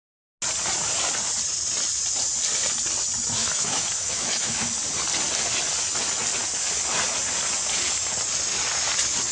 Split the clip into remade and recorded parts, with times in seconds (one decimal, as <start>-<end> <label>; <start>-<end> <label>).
0.0-3.4 recorded; 3.4-4.7 remade; 4.7-9.3 recorded